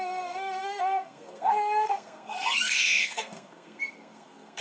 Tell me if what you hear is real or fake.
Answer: fake